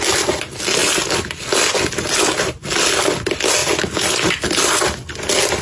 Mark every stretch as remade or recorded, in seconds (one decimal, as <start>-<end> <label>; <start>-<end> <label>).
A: 0.0-5.6 recorded